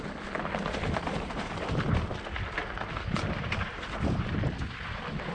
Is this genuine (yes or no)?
yes